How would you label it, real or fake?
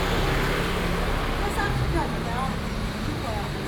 real